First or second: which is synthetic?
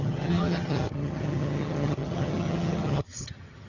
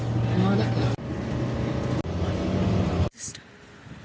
first